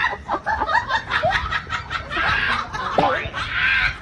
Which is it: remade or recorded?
recorded